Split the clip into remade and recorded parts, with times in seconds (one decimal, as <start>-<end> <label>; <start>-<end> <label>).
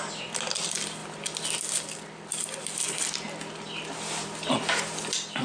0.0-5.4 recorded